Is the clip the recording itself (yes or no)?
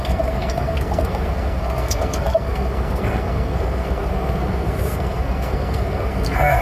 no